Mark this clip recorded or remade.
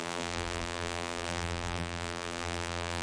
remade